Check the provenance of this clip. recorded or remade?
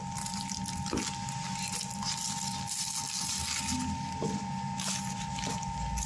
recorded